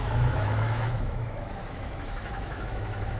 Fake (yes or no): yes